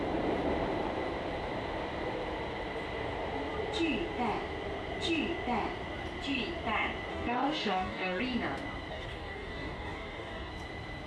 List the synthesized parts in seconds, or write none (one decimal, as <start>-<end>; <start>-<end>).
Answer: 7.1-8.2; 8.9-10.5